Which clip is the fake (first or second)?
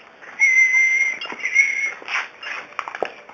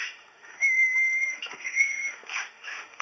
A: second